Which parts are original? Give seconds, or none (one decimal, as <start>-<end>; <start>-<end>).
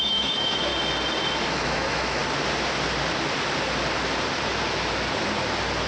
0.7-1.5; 2.2-5.9